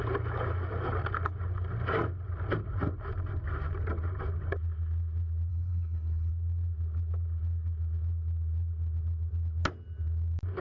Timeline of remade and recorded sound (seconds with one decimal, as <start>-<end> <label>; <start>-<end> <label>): 0.0-5.5 recorded; 5.5-6.3 remade; 6.3-10.6 recorded